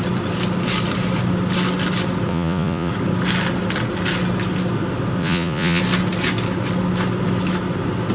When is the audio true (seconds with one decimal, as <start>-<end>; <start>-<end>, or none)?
0.0-2.3; 2.9-5.2; 5.8-8.1